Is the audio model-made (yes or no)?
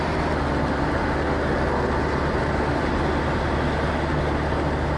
no